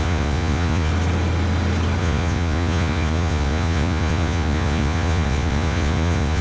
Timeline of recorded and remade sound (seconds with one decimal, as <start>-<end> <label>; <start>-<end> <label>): 0.0-0.9 remade; 0.9-2.0 recorded; 2.0-6.4 remade